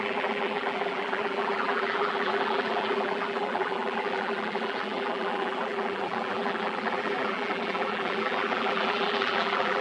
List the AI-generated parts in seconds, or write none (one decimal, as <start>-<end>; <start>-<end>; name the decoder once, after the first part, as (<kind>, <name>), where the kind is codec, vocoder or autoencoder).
0.0-9.8 (vocoder, BigVGAN v2)